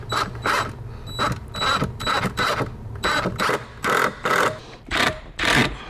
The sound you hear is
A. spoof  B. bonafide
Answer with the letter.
B